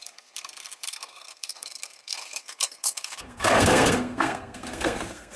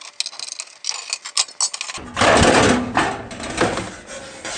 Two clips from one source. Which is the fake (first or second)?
first